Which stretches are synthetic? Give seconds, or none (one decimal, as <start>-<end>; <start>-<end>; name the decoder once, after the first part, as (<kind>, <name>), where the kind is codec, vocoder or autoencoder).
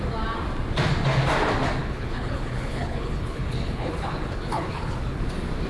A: 1.8-5.2 (codec, HILCodec)